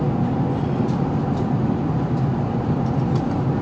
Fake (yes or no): no